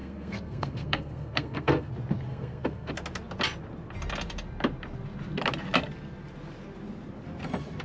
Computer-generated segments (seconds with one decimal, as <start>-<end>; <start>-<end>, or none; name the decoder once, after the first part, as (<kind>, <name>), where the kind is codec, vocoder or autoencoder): 0.0-1.9 (codec, SNAC); 2.3-2.9